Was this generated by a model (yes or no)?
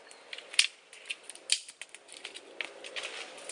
no